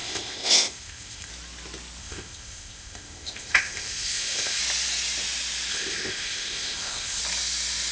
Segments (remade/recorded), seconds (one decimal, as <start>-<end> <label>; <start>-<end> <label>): 0.0-1.3 remade; 1.3-2.0 recorded; 2.0-4.6 remade; 4.6-5.7 recorded; 5.7-7.2 remade; 7.2-7.9 recorded